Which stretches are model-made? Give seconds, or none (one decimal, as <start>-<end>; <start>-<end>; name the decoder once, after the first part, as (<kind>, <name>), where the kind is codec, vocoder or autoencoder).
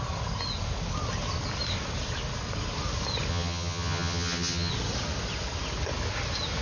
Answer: 3.3-4.7 (vocoder, HiFi-GAN)